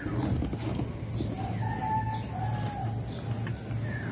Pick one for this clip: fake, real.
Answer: real